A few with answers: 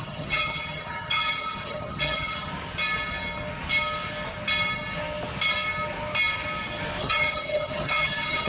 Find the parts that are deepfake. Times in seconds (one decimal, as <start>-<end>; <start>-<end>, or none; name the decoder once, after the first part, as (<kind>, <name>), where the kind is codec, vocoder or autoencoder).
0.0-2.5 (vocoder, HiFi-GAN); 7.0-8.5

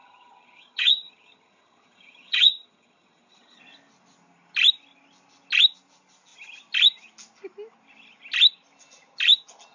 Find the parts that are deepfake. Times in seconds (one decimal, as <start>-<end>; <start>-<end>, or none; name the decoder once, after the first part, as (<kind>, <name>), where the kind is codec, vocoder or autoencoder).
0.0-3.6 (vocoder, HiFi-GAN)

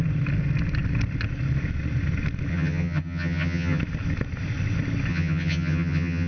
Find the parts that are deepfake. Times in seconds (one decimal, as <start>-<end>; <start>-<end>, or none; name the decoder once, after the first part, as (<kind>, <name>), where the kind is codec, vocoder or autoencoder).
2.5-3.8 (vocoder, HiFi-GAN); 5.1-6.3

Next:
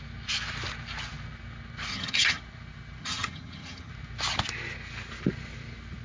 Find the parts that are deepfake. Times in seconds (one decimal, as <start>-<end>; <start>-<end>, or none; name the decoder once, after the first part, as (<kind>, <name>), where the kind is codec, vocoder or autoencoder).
1.9-2.4 (vocoder, HiFi-GAN); 3.0-3.9

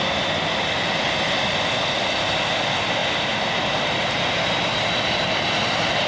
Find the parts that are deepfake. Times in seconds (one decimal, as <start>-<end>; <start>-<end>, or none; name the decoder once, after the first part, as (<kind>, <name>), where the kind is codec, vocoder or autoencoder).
none

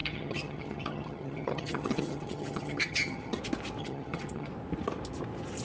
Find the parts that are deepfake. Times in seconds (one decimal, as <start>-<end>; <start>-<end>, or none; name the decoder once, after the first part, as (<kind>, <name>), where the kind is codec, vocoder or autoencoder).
0.0-3.4 (vocoder, HiFi-GAN); 3.8-4.5

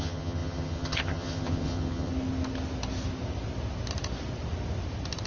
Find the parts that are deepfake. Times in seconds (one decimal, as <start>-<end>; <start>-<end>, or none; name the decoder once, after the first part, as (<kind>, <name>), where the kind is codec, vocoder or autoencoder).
0.0-2.1 (vocoder, HiFi-GAN)

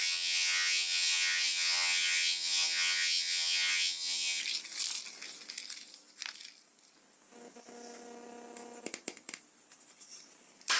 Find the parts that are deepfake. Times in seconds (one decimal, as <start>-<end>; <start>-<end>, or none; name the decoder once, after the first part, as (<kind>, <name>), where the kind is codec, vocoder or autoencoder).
0.0-4.4 (vocoder, HiFi-GAN)